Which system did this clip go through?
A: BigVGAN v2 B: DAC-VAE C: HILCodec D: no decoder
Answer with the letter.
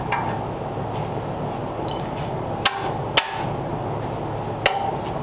D